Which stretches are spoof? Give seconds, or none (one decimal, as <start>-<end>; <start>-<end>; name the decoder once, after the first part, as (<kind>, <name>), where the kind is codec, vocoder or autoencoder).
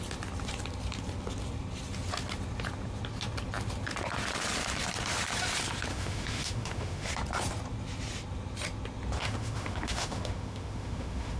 5.9-7.1 (autoencoder, DAC-VAE); 9.2-11.4